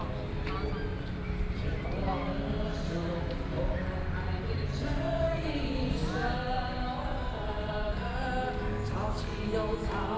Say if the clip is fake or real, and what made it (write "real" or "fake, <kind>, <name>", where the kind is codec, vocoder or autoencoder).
real